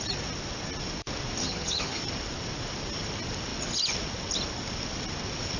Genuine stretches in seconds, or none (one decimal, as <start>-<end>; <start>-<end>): 0.0-1.4; 2.0-5.6